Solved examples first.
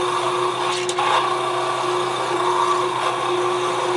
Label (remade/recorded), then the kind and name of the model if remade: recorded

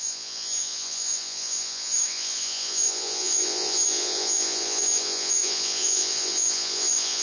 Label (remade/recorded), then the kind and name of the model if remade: remade, vocoder, Vocos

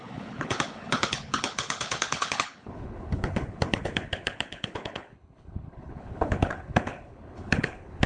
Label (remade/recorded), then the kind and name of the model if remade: remade, codec, HILCodec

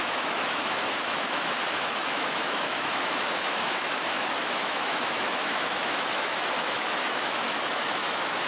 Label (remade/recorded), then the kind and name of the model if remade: remade, autoencoder, DAC-VAE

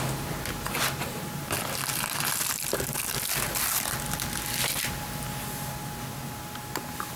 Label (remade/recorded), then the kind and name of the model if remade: recorded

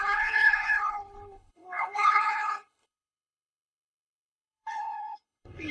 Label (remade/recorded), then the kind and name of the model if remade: remade, codec, HILCodec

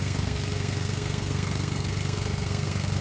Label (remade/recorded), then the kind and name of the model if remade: remade, codec, SNAC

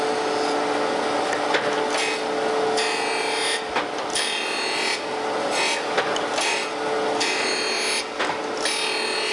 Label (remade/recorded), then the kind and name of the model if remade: recorded